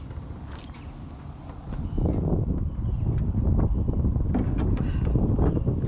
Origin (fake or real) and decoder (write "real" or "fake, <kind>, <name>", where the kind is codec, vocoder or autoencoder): real